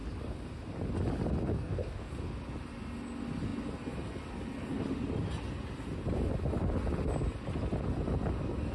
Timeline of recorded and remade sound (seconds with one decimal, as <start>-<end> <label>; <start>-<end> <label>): 0.0-1.5 recorded; 1.5-2.1 remade; 2.1-8.7 recorded